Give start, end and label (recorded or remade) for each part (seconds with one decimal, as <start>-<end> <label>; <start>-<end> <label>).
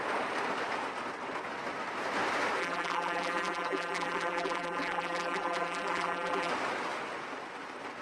0.0-2.6 recorded; 2.6-6.5 remade; 6.5-8.0 recorded